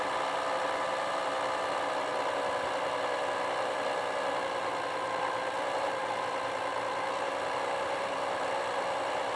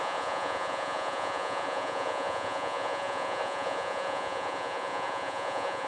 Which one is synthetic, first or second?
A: second